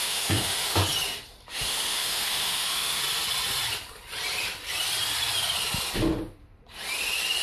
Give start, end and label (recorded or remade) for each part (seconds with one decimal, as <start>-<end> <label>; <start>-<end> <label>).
0.0-0.8 remade; 0.8-1.5 recorded; 1.5-3.0 remade; 3.0-7.4 recorded